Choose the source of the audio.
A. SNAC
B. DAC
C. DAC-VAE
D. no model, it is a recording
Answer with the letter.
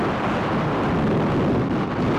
D